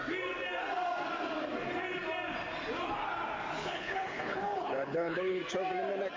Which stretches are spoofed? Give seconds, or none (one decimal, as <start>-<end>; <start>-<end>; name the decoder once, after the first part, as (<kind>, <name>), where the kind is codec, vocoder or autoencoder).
3.6-5.4 (codec, HILCodec)